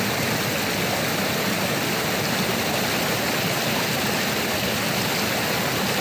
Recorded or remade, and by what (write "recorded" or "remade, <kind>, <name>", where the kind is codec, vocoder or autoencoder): recorded